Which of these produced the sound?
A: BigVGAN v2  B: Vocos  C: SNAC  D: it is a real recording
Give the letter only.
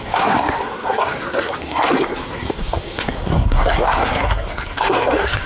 C